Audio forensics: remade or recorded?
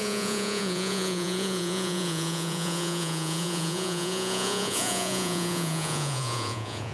remade